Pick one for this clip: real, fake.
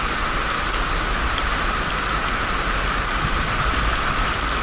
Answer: real